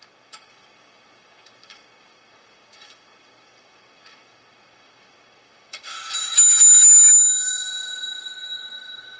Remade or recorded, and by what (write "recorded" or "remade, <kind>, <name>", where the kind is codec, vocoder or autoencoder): remade, codec, DAC